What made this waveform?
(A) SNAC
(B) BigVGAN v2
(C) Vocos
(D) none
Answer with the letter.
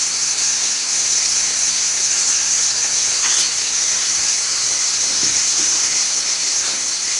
A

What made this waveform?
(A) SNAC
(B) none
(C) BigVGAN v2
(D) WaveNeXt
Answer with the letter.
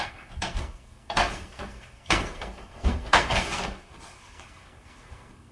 A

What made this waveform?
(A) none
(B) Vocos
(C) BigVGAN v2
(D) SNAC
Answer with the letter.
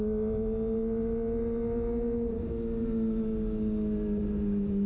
A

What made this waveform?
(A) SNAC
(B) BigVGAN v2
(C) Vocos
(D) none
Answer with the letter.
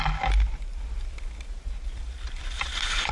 D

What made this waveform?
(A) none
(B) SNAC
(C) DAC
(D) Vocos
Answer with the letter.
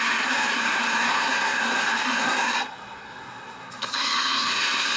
B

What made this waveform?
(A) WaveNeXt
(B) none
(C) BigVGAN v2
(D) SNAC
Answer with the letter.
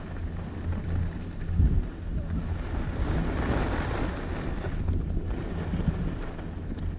B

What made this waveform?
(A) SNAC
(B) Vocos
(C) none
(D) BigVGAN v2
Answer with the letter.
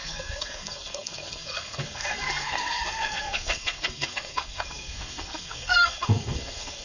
A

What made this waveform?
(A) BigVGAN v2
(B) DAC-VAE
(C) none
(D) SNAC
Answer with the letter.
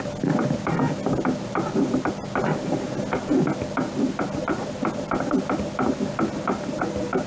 C